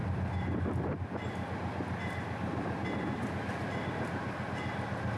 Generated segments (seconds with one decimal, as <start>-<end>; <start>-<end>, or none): none